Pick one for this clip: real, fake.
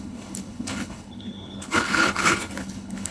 fake